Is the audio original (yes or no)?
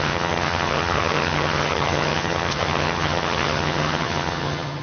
no